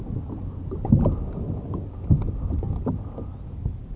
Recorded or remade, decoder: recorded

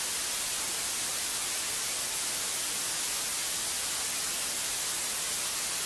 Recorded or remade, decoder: recorded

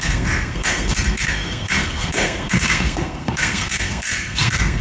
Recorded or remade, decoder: remade, codec, SNAC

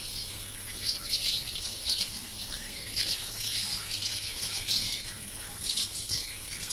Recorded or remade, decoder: remade, codec, SNAC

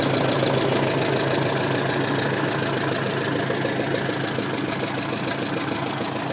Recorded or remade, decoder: recorded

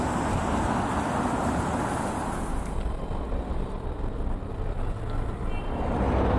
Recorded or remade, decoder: recorded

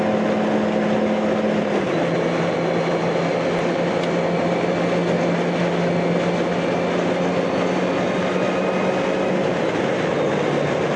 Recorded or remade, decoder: recorded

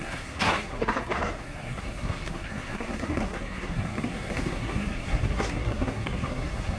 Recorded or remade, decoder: remade, codec, SNAC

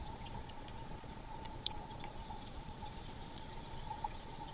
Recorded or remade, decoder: remade, vocoder, Vocos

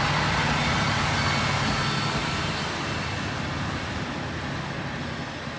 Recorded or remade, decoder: recorded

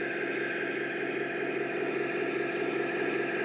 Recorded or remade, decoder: recorded